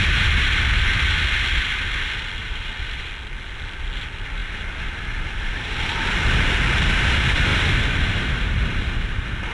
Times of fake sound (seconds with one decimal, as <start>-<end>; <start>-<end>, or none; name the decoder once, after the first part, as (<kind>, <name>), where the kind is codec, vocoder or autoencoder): 2.4-3.1 (vocoder, BigVGAN v2); 7.5-8.8